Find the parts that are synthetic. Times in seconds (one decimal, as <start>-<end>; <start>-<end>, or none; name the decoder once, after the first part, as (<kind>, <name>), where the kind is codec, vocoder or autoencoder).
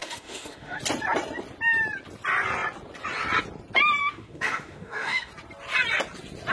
0.0-0.8 (autoencoder, DAC-VAE); 4.0-5.3